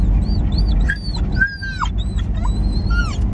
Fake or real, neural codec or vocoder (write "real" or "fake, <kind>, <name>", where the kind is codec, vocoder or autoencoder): real